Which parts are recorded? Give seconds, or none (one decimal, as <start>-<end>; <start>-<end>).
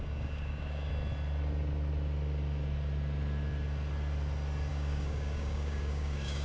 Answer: 0.9-4.7